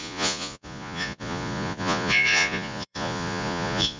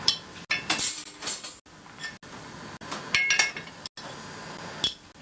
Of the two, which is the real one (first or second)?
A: second